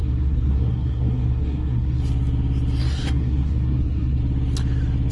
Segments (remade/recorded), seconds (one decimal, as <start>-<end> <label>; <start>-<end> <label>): 0.0-2.0 remade; 2.0-2.8 recorded; 2.8-4.2 remade; 4.2-5.1 recorded